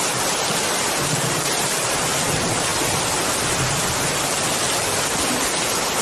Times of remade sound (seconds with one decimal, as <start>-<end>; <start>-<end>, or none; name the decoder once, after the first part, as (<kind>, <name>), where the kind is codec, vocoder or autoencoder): none